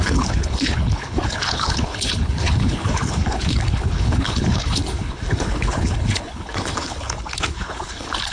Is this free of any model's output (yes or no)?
no